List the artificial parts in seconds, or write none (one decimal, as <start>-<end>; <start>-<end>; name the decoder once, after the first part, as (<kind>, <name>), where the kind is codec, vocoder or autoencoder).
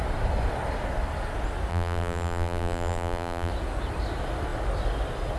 1.7-3.5 (vocoder, BigVGAN v2)